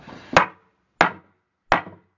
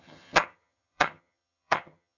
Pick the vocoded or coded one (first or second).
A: second